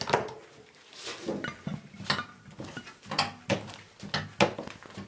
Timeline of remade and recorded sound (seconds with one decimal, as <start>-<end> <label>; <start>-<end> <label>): 0.0-5.1 recorded